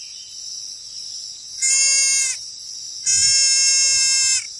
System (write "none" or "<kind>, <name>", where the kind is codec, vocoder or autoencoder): none